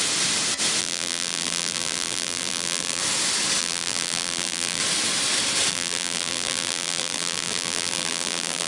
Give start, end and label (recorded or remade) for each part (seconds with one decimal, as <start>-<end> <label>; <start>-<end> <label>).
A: 0.0-0.8 recorded; 0.8-3.0 remade; 3.0-3.6 recorded; 3.6-4.8 remade; 4.8-5.7 recorded; 5.7-8.7 remade

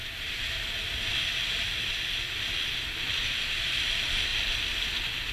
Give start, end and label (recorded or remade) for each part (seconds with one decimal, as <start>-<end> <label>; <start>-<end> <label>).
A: 0.0-5.3 recorded

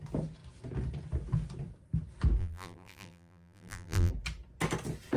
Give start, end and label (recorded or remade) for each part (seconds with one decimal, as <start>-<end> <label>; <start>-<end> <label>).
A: 0.0-2.4 recorded; 2.4-4.1 remade; 4.1-5.2 recorded

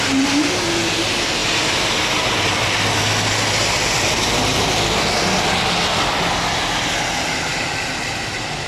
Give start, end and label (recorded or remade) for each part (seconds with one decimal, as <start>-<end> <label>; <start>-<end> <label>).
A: 0.0-7.5 recorded; 7.5-8.7 remade

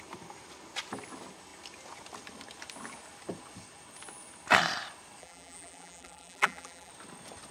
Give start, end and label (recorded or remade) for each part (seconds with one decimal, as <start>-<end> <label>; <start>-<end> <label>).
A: 0.0-5.2 recorded; 5.2-6.9 remade; 6.9-7.5 recorded

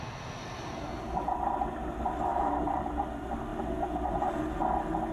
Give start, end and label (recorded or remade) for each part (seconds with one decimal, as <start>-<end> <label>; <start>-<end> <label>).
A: 0.0-2.3 recorded; 2.3-2.8 remade; 2.8-5.1 recorded